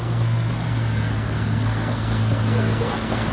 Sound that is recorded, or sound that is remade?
remade